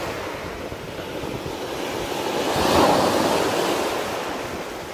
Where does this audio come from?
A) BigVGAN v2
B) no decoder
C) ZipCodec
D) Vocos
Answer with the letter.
B